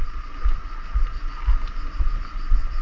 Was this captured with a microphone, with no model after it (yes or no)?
yes